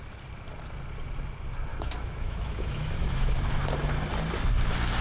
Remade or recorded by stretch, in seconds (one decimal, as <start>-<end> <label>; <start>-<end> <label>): 0.0-1.7 recorded; 1.7-3.4 remade; 3.4-5.0 recorded